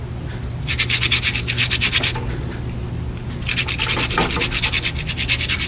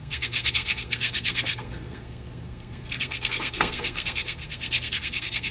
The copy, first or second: second